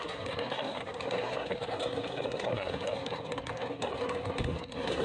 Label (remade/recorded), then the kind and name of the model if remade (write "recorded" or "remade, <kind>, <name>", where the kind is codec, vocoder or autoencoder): remade, codec, SNAC